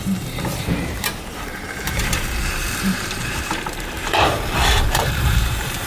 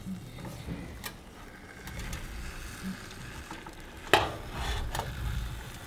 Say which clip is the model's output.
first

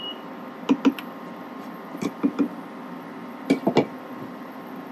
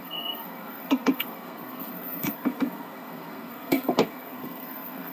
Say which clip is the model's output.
second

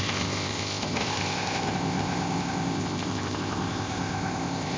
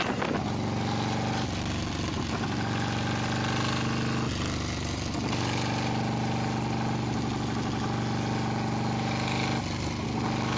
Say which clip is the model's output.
first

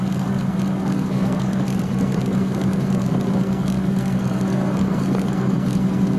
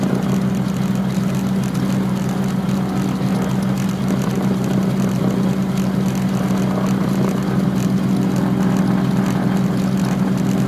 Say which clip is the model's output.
first